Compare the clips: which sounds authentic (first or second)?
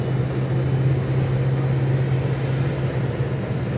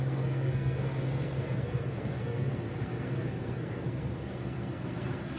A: first